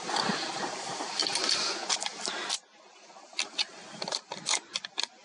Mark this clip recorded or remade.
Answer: recorded